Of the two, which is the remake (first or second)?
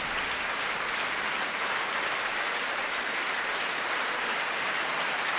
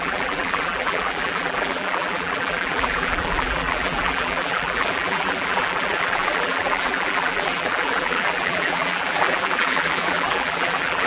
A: second